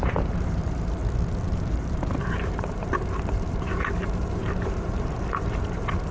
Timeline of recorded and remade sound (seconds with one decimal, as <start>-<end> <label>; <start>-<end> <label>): 0.0-1.0 remade; 1.0-1.5 recorded; 1.5-6.1 remade